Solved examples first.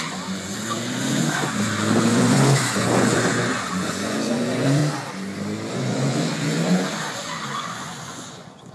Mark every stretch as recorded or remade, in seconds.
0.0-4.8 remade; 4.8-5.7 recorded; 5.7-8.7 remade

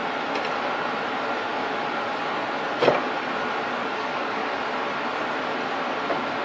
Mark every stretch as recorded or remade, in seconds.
0.0-3.8 recorded; 3.8-4.6 remade; 4.6-6.4 recorded

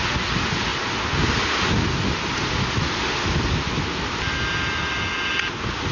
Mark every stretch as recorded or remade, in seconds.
0.0-5.9 recorded

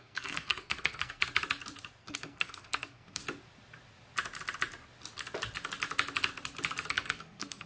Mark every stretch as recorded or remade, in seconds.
0.0-1.2 remade; 1.2-2.0 recorded; 2.0-3.2 remade; 3.2-6.9 recorded; 6.9-7.7 remade